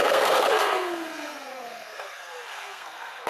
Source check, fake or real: fake